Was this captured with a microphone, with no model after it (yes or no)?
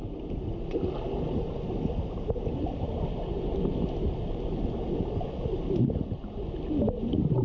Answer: yes